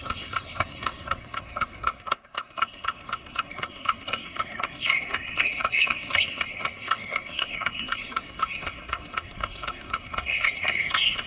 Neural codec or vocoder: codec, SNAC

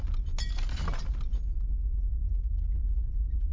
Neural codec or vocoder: none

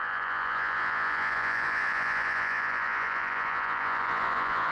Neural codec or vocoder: vocoder, Vocos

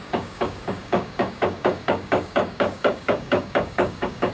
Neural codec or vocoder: codec, DAC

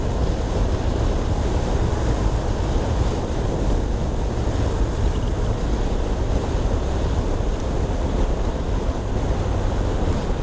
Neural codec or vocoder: none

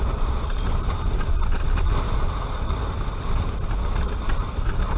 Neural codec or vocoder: none